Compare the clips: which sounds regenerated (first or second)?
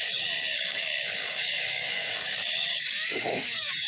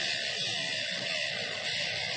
first